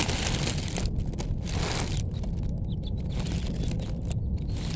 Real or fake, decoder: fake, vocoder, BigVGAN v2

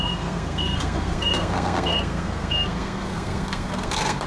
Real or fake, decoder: fake, codec, SNAC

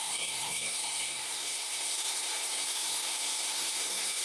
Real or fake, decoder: fake, codec, SNAC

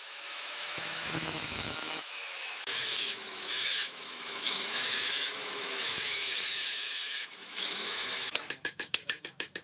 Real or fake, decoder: fake, autoencoder, DAC-VAE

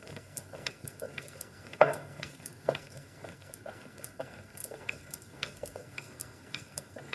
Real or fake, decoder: fake, codec, SNAC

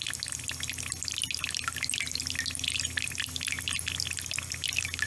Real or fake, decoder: real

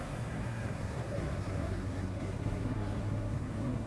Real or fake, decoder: fake, codec, SNAC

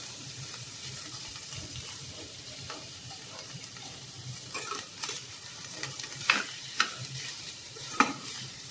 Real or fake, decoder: fake, vocoder, BigVGAN v2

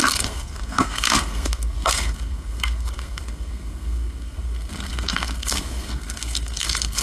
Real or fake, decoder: fake, codec, SNAC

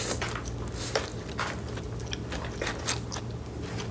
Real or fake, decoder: real